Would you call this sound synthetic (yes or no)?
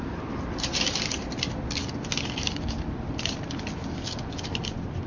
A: no